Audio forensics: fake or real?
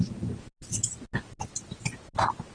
real